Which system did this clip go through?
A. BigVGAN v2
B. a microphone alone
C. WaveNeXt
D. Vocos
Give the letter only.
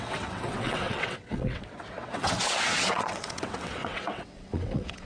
C